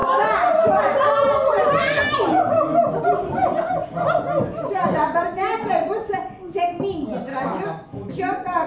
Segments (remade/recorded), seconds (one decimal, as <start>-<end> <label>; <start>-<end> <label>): 0.0-7.3 recorded; 7.3-8.1 remade; 8.1-8.7 recorded